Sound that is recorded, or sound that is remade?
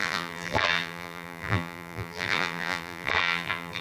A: remade